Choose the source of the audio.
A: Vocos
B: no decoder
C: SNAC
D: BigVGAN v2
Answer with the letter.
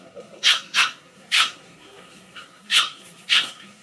C